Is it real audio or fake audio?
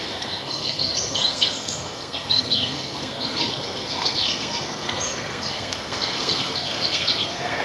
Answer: fake